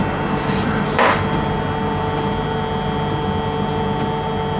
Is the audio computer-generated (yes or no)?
no